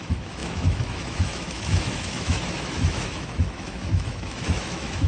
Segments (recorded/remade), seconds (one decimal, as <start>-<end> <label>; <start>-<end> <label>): 0.0-5.1 remade